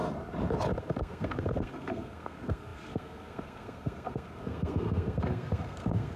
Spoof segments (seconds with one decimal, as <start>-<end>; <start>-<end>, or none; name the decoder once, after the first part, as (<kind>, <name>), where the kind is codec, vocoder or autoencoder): 0.8-6.2 (codec, SNAC)